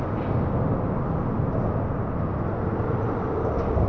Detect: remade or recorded recorded